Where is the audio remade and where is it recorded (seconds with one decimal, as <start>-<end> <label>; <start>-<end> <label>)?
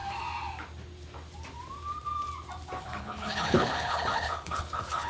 0.0-2.8 recorded; 2.8-5.1 remade